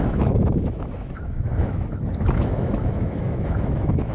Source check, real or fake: fake